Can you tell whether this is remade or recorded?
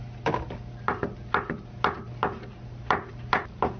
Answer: recorded